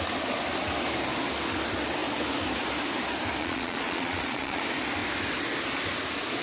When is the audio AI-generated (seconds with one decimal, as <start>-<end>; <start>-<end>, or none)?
3.4-4.6